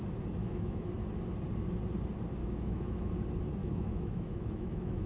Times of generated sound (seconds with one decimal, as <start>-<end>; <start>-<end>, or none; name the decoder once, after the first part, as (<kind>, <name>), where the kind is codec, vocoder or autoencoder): 0.4-0.9 (autoencoder, DAC-VAE); 2.4-3.1; 3.6-5.1

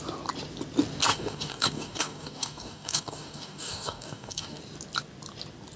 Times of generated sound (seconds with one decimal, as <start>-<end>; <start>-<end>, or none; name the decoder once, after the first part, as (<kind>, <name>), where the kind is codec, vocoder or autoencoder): 1.1-4.6 (codec, DAC)

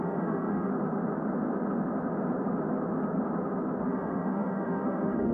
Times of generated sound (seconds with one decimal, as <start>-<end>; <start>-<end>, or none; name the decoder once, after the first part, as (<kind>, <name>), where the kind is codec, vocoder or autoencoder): 0.0-0.7 (autoencoder, DAC-VAE); 3.9-5.3

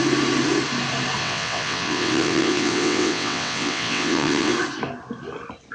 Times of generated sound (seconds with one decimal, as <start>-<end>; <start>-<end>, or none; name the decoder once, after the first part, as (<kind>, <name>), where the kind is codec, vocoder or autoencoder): 1.2-4.5 (vocoder, WaveNeXt)

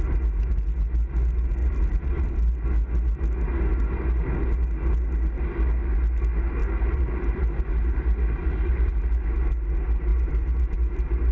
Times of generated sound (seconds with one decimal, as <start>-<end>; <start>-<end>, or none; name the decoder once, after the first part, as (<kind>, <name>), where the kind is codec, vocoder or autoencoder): 1.6-2.5 (vocoder, BigVGAN v2); 6.6-8.9; 10.1-11.3

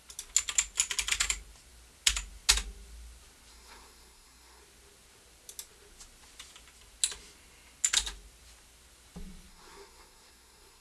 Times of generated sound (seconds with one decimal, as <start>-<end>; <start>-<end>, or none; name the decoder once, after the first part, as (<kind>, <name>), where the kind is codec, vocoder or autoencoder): 3.5-4.6 (codec, SNAC); 9.5-10.8

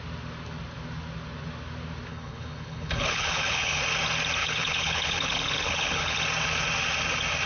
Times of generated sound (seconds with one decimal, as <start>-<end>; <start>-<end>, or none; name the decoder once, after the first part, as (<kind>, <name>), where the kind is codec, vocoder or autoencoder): 2.1-3.8 (codec, HILCodec); 4.4-6.2

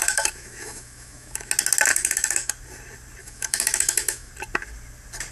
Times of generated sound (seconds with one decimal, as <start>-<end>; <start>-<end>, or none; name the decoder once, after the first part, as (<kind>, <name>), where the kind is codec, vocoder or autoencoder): 0.0-1.5 (autoencoder, DAC-VAE); 1.9-2.5; 3.2-4.3